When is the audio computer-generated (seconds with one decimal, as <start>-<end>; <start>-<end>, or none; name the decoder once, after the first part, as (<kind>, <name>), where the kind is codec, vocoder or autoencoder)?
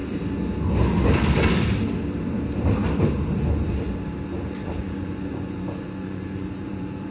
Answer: 4.6-7.1 (vocoder, Vocos)